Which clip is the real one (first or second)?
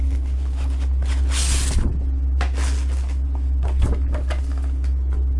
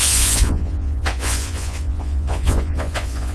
first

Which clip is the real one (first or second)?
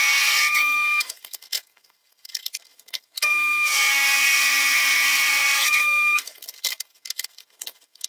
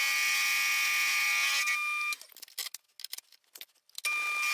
second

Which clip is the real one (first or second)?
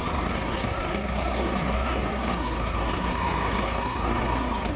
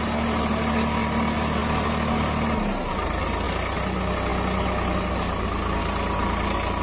second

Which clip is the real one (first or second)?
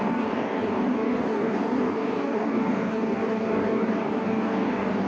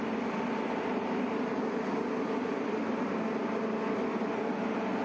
second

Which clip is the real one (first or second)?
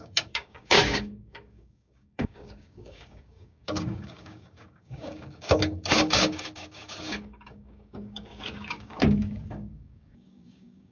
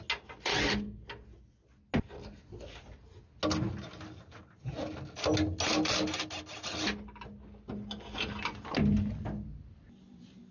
second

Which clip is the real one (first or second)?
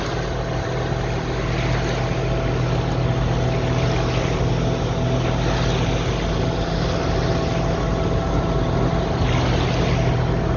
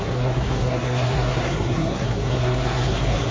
first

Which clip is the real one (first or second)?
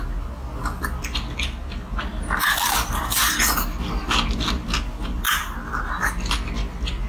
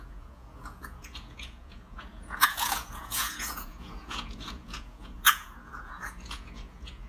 first